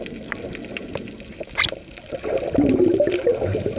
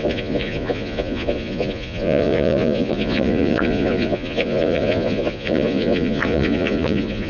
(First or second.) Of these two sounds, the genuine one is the first